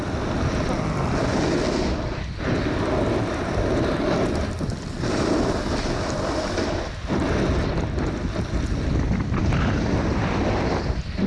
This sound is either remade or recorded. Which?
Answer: recorded